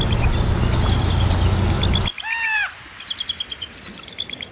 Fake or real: real